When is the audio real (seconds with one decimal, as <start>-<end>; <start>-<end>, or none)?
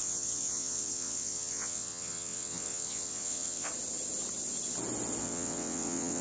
3.7-5.2